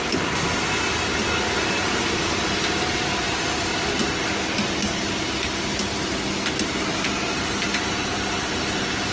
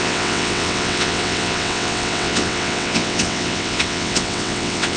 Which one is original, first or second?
first